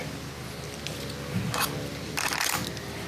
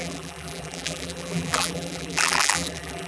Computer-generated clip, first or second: second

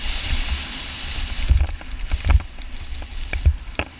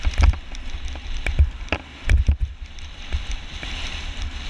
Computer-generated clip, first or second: first